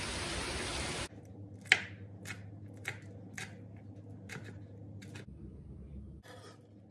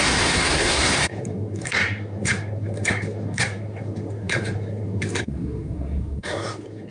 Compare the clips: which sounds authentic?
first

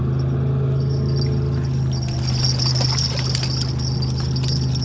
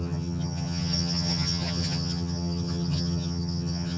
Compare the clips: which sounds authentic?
first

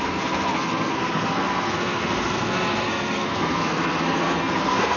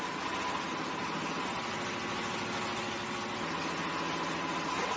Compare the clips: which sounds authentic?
second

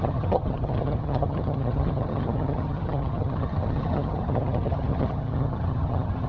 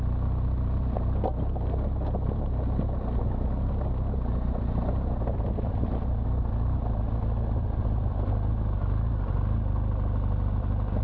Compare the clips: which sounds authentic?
second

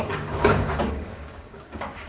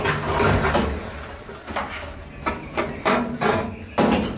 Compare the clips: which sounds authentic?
second